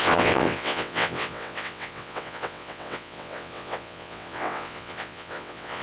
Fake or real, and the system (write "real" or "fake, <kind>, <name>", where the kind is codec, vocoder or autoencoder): fake, vocoder, WaveNeXt